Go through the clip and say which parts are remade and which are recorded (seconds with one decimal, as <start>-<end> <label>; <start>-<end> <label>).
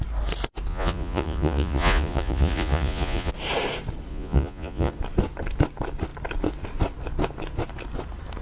0.0-0.7 recorded; 0.7-3.3 remade; 3.3-4.1 recorded; 4.1-4.9 remade; 4.9-8.4 recorded